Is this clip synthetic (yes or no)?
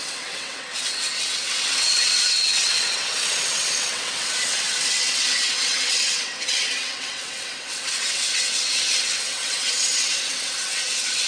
yes